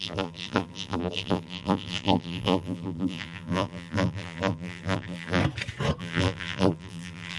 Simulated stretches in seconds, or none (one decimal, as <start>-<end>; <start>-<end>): 0.0-5.4; 6.0-7.4